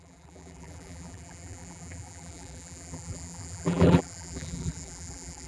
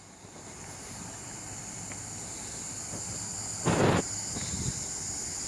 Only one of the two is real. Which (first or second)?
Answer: second